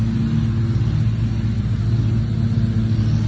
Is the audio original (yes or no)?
yes